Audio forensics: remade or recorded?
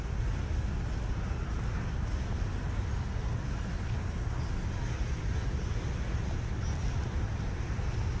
recorded